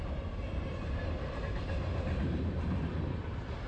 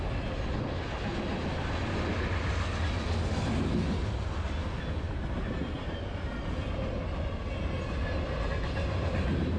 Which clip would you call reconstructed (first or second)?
first